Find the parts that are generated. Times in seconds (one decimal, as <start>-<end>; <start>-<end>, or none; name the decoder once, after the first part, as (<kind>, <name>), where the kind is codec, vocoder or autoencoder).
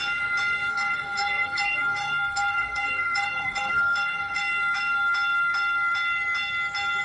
0.7-4.4 (codec, SNAC)